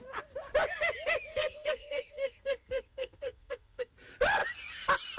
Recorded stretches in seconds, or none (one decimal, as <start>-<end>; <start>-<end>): 0.0-1.3; 3.9-5.2